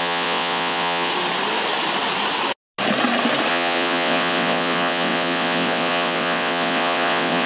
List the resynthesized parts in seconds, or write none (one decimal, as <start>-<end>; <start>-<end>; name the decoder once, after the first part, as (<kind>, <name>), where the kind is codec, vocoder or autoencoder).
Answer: 0.0-1.1 (vocoder, WaveNeXt); 3.5-7.5